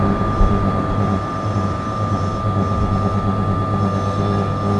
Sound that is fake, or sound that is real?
real